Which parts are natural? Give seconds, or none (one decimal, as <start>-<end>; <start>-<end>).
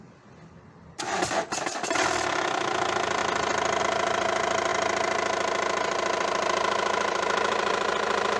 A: 3.2-3.8